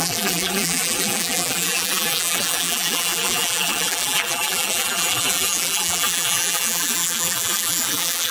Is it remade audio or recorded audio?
remade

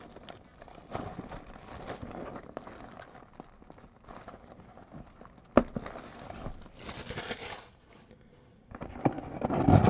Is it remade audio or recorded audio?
recorded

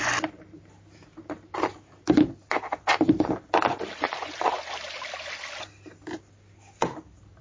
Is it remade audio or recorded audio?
recorded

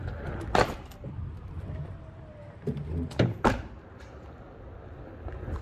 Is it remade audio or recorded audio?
recorded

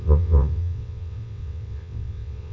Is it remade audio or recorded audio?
remade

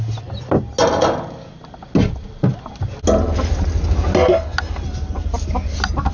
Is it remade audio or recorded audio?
recorded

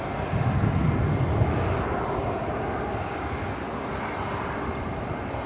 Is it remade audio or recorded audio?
recorded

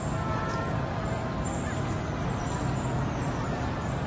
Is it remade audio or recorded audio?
recorded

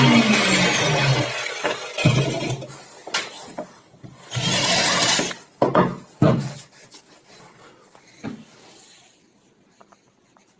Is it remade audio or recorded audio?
recorded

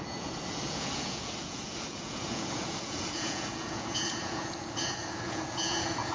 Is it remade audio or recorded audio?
remade